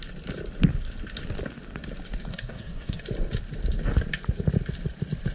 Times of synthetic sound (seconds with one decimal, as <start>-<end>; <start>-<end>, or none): 2.3-3.0